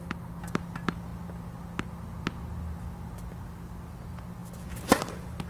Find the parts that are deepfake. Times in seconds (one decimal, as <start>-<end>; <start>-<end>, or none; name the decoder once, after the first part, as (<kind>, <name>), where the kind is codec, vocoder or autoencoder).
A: none